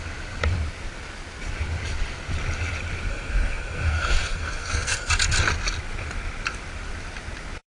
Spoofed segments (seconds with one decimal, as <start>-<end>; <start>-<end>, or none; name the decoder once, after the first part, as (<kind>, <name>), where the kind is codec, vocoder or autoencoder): 3.1-5.1 (codec, SNAC)